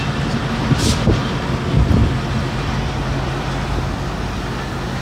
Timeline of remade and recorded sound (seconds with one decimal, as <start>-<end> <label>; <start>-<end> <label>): 0.0-5.0 recorded